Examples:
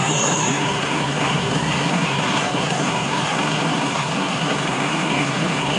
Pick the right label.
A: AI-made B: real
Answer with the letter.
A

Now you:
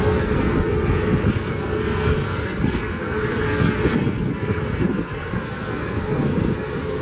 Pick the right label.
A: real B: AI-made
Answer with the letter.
B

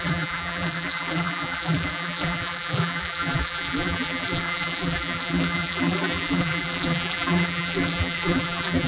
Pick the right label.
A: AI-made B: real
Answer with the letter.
A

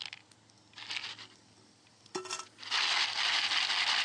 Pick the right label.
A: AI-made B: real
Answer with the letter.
B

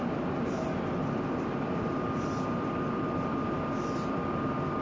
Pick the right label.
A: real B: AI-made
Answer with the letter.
A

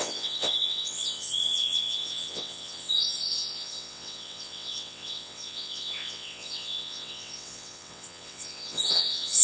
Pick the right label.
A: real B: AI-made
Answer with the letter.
B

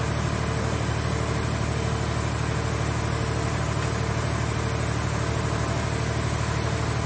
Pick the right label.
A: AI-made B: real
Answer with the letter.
B